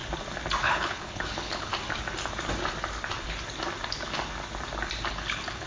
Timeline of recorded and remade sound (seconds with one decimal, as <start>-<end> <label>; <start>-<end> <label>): 0.0-0.6 recorded; 0.6-1.7 remade; 1.7-5.1 recorded; 5.1-5.7 remade